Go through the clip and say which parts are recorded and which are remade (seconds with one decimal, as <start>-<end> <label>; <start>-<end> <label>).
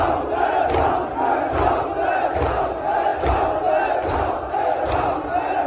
0.0-5.7 recorded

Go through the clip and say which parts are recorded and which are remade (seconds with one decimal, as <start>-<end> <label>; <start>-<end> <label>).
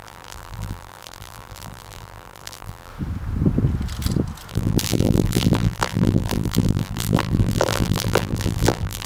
0.0-2.9 remade; 2.9-4.5 recorded; 4.5-9.1 remade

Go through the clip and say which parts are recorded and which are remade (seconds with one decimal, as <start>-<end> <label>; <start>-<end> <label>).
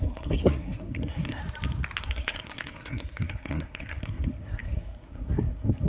0.0-1.4 remade; 1.4-2.0 recorded; 2.0-5.9 remade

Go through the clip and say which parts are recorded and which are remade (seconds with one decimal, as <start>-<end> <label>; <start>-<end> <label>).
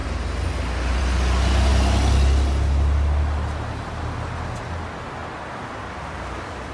0.0-6.7 recorded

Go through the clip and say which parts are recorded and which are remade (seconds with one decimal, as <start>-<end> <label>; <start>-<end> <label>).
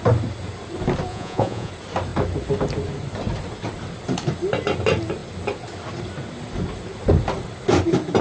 0.0-1.1 recorded; 1.1-1.7 remade; 1.7-8.2 recorded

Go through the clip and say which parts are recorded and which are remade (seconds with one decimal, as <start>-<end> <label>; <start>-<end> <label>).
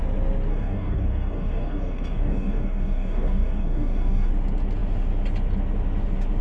0.0-0.5 recorded; 0.5-4.3 remade; 4.3-6.4 recorded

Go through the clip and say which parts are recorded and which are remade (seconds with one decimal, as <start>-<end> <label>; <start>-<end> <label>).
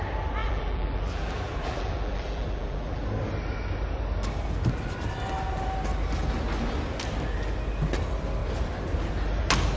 0.0-0.4 recorded; 0.4-3.0 remade; 3.0-9.8 recorded